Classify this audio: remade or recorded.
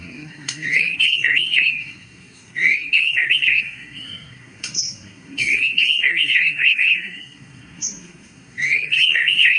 remade